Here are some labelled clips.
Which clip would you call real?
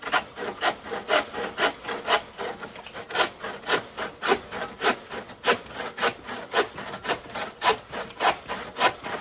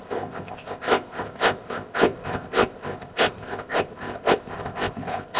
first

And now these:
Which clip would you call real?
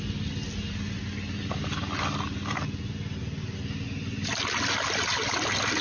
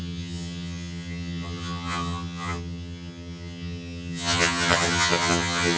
first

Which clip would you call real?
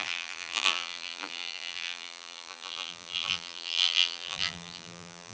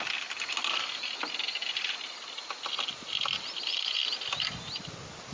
second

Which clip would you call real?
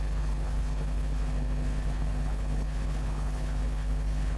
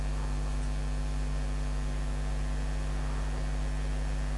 second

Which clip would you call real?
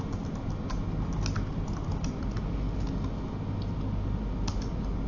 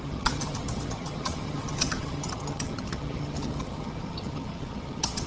first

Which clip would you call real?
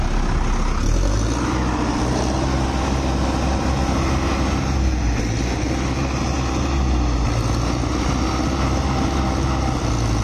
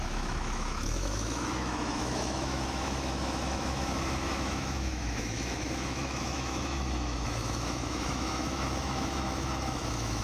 first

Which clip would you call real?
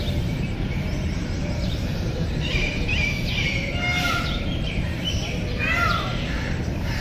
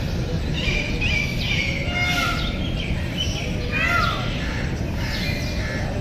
second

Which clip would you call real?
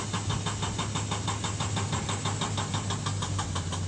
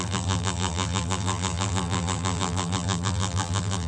first